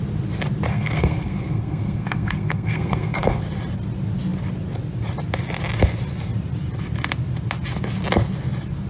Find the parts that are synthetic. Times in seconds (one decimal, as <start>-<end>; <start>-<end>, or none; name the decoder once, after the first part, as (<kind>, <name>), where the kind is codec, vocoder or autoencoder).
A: 0.7-3.4 (codec, SNAC)